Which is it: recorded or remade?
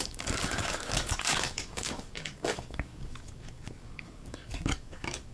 remade